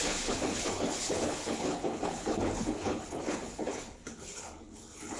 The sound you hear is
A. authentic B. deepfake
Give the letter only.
B